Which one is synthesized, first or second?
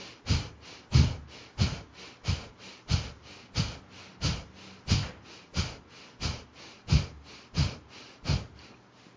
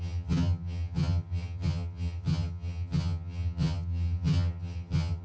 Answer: second